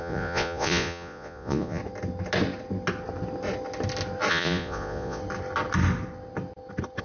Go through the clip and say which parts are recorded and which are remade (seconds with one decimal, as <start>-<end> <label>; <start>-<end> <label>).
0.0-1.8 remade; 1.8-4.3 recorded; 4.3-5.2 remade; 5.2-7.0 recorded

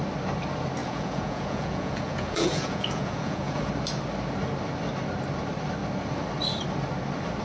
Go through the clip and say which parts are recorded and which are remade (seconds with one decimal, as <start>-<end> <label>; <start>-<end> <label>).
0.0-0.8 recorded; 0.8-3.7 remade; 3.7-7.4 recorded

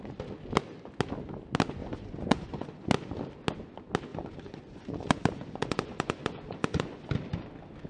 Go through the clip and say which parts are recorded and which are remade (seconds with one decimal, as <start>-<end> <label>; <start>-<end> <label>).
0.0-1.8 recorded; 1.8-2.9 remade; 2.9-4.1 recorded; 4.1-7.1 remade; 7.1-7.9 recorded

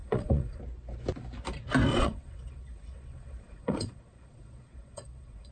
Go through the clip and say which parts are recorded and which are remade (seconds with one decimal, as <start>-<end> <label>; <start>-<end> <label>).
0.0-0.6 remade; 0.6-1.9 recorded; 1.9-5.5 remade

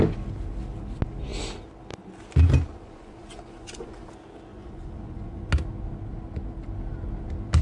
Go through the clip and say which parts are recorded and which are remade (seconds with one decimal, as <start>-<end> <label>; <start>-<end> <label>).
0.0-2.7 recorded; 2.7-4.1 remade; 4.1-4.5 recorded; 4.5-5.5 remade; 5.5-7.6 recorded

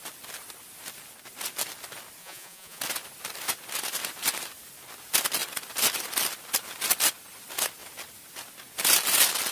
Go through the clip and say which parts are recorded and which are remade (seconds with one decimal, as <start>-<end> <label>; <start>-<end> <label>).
0.0-2.2 recorded; 2.2-2.8 remade; 2.8-9.5 recorded